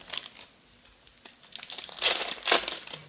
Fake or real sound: real